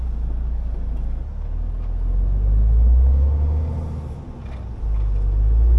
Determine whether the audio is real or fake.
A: real